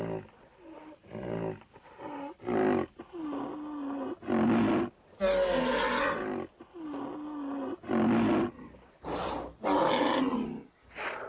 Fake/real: real